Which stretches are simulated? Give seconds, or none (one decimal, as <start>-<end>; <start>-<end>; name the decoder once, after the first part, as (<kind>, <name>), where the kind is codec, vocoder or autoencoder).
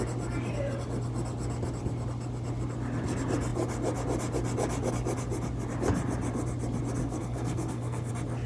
7.0-8.1 (codec, SNAC)